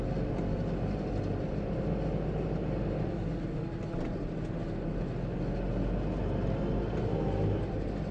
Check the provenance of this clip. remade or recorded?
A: recorded